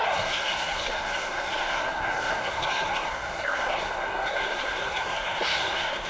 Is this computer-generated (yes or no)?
yes